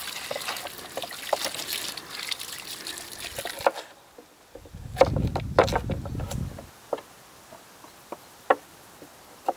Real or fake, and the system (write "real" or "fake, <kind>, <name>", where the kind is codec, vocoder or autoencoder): real